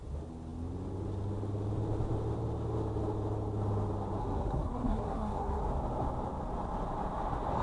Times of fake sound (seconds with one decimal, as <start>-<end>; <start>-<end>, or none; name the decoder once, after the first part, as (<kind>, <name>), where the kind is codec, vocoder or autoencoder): 4.2-5.6 (codec, SNAC)

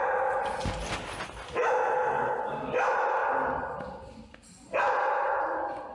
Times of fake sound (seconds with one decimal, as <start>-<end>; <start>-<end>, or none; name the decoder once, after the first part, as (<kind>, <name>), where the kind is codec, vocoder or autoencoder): none

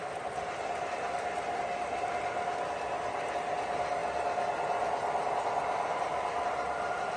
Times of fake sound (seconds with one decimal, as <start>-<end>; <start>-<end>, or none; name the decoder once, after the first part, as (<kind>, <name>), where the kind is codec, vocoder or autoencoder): none

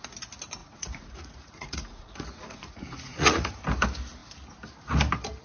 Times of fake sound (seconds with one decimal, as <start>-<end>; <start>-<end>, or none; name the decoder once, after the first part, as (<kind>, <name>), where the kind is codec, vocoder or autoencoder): 0.6-3.5 (vocoder, Vocos)

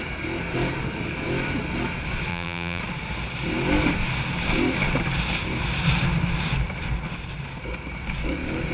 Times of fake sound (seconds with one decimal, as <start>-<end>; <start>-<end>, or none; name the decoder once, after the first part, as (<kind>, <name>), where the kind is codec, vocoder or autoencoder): 2.3-2.8 (vocoder, BigVGAN v2)